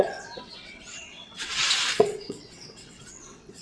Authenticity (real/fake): fake